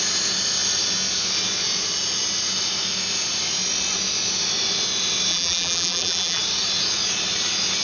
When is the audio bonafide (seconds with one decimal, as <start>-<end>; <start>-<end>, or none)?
0.0-5.3; 6.4-7.8